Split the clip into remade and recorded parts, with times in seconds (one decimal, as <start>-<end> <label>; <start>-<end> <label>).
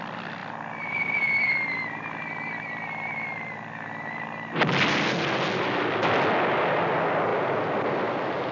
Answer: 0.0-8.5 recorded